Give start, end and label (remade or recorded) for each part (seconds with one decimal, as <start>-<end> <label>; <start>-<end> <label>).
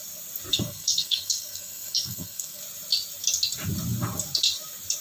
0.0-0.5 recorded; 0.5-2.6 remade; 2.6-5.0 recorded